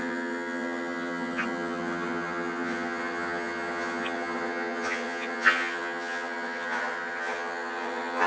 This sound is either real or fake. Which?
fake